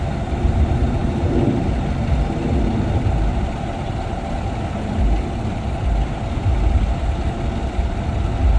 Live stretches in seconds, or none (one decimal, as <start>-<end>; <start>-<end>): 0.0-8.6